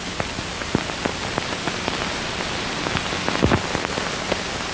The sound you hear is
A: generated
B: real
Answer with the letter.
B